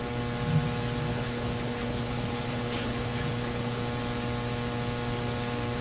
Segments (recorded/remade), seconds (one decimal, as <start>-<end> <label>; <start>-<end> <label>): 0.0-1.1 recorded; 1.1-3.8 remade; 3.8-5.8 recorded